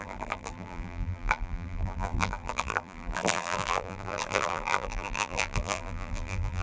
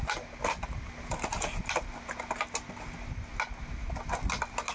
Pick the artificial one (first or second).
first